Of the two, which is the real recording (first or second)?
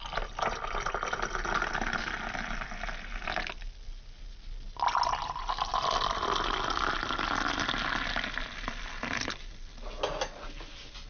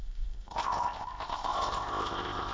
first